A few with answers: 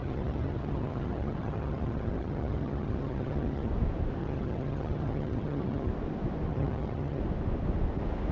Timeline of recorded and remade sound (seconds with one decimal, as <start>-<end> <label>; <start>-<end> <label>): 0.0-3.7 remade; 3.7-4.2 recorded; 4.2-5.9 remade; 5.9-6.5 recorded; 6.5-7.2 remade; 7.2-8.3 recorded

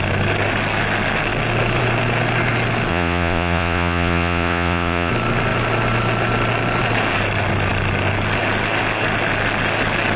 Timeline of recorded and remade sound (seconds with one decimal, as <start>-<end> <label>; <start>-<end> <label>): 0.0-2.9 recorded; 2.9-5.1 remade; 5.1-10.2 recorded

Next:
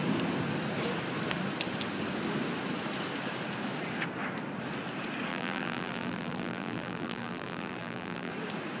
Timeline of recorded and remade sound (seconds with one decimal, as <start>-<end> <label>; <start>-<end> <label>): 0.0-5.3 recorded; 5.3-8.3 remade; 8.3-8.8 recorded

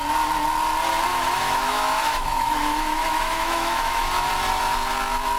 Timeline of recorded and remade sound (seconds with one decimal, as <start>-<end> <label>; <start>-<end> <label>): 0.0-1.1 recorded; 1.1-4.3 remade; 4.3-5.4 recorded

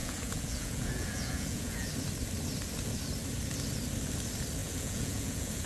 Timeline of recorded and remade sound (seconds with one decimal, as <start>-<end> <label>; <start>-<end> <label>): 0.0-1.9 remade; 1.9-4.6 recorded; 4.6-5.7 remade

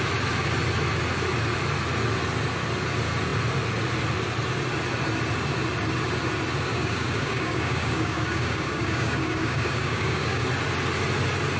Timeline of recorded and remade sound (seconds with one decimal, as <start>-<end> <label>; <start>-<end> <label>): 0.0-6.7 recorded; 6.7-10.4 remade; 10.4-11.6 recorded

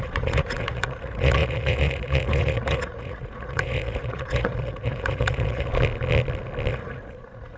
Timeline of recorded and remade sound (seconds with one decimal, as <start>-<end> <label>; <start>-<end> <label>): 0.0-5.7 remade; 5.7-6.7 recorded; 6.7-7.6 remade

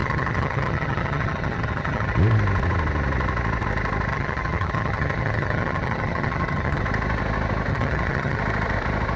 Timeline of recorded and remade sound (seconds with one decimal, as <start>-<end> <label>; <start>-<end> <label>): 0.0-2.1 remade; 2.1-4.1 recorded; 4.1-6.8 remade; 6.8-7.7 recorded; 7.7-8.4 remade; 8.4-9.2 recorded